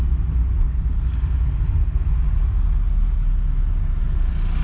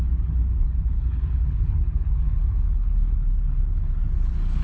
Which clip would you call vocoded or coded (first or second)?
second